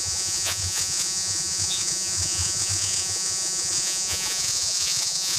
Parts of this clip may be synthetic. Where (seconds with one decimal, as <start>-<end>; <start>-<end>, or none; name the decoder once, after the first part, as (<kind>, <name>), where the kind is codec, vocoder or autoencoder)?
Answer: 0.0-5.4 (vocoder, Vocos)